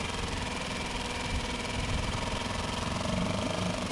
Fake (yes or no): yes